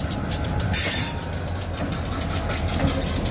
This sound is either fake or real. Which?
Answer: real